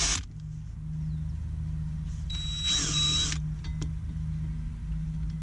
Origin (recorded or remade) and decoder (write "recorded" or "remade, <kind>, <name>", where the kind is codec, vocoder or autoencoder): recorded